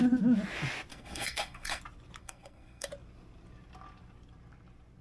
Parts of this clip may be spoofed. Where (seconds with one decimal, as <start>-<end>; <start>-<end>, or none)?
0.9-1.8; 2.2-2.9